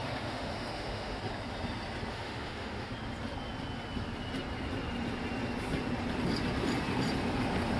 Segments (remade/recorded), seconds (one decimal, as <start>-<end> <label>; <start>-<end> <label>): 0.0-1.2 remade; 1.2-2.1 recorded; 2.1-2.9 remade; 2.9-7.8 recorded